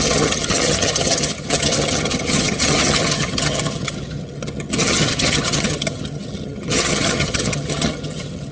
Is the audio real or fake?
fake